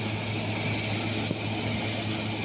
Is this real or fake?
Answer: real